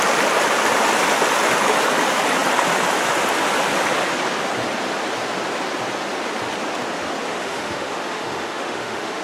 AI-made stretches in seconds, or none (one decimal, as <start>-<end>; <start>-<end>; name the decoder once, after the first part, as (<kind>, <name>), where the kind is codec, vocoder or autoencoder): 7.3-9.2 (autoencoder, DAC-VAE)